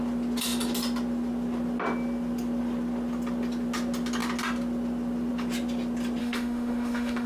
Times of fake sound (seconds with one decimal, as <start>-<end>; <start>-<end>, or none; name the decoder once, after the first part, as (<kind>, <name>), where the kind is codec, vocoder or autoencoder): 6.2-7.3 (autoencoder, DAC-VAE)